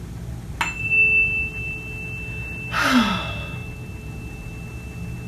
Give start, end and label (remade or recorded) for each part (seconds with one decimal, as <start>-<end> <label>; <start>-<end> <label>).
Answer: 0.0-5.3 recorded